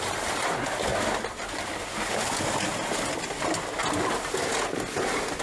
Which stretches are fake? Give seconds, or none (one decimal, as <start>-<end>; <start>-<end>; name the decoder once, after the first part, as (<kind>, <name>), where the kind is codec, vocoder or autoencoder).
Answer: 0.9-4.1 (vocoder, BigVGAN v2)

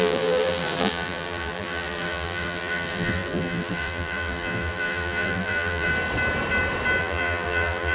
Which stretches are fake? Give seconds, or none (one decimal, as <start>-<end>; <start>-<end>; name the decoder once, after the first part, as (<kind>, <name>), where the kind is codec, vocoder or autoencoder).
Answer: 0.0-5.9 (vocoder, BigVGAN v2); 7.0-7.9

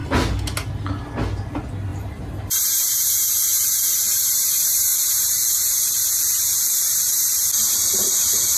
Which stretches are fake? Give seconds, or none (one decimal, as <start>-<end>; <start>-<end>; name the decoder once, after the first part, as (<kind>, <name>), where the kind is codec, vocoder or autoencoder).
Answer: 1.9-3.9 (vocoder, BigVGAN v2)

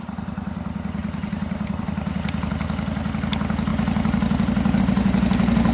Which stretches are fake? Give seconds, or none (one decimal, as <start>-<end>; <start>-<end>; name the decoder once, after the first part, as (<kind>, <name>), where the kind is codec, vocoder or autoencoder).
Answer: 1.0-2.5 (vocoder, BigVGAN v2); 3.7-4.8

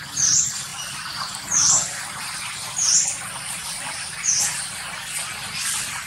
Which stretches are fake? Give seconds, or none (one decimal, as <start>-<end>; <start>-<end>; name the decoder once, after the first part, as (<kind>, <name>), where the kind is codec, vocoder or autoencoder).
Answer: 0.7-4.4 (vocoder, BigVGAN v2)

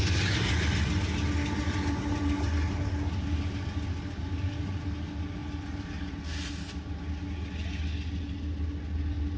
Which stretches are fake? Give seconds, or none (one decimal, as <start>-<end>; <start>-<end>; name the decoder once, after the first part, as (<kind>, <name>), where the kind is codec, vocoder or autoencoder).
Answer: none

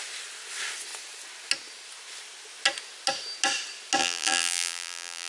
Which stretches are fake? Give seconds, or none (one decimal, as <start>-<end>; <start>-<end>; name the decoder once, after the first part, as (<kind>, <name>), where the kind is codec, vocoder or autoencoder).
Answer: 4.0-5.3 (vocoder, BigVGAN v2)